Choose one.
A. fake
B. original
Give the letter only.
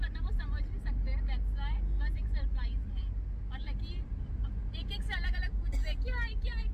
B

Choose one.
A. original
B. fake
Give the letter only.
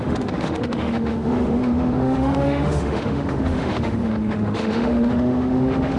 B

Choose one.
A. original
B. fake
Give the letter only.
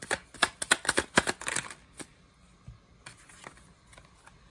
A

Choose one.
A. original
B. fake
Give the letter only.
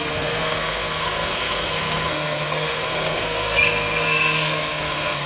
B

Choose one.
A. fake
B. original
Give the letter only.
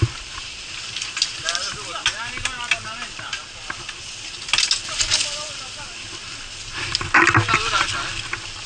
B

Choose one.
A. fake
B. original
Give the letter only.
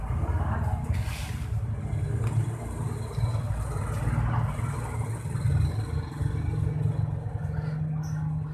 B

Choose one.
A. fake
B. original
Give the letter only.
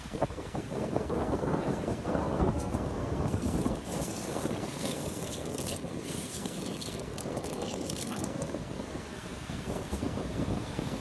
A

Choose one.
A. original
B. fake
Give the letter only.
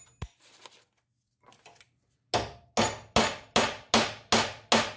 A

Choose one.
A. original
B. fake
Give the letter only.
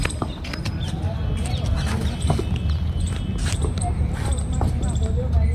A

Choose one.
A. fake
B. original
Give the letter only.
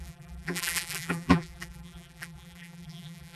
A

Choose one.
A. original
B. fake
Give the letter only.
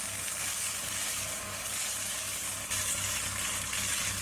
B